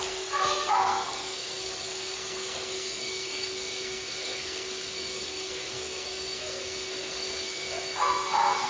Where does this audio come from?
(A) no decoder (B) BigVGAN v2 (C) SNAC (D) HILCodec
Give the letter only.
C